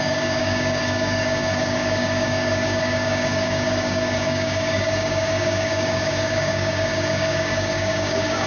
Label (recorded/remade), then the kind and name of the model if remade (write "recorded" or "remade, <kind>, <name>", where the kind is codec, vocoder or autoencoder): remade, codec, DAC